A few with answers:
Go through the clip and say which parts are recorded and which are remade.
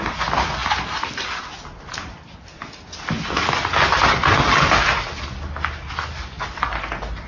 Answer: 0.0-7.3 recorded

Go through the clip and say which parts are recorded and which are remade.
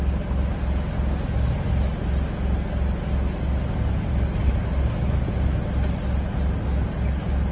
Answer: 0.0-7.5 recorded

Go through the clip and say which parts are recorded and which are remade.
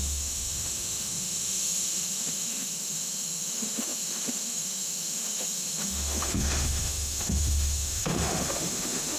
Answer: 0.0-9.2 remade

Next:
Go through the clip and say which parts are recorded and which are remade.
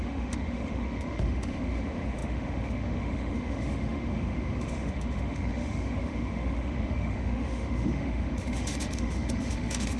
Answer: 0.0-10.0 remade